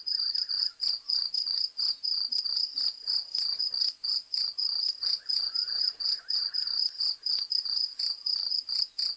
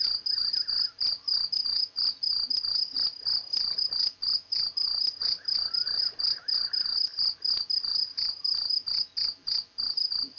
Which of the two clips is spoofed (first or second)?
first